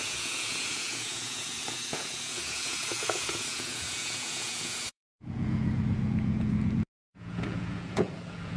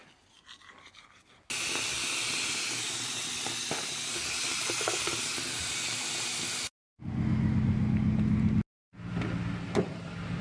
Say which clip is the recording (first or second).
second